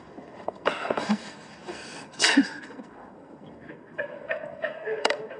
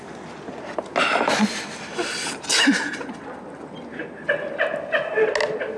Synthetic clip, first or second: first